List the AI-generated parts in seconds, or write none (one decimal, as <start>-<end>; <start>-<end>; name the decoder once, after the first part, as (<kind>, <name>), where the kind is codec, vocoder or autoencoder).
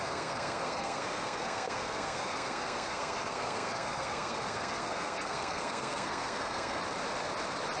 0.0-6.8 (codec, SNAC)